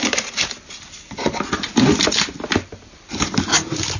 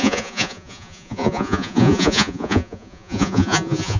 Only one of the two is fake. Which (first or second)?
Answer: second